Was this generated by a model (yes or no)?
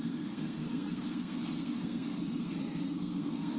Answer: yes